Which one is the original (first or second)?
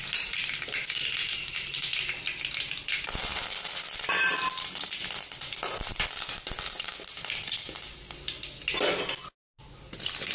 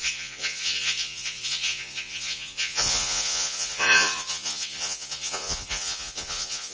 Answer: first